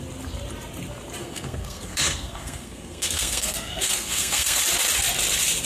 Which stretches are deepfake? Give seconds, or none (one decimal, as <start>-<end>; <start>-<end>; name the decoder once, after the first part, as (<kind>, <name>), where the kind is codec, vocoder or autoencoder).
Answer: 1.2-4.6 (codec, SNAC)